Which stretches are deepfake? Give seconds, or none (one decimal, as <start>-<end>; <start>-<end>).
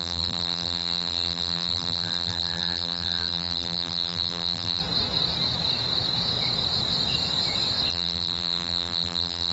0.0-4.8; 7.9-9.5